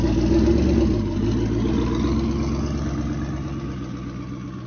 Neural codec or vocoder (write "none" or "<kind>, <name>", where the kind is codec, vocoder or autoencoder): none